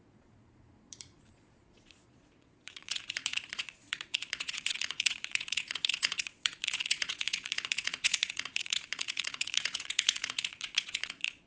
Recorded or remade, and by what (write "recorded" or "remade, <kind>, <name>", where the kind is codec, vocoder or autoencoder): remade, vocoder, Vocos